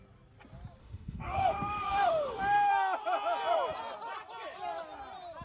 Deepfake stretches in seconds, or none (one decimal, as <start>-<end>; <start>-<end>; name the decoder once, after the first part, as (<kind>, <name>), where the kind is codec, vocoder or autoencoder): 0.8-2.7 (autoencoder, DAC-VAE)